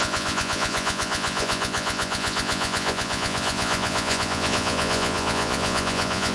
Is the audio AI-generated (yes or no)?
yes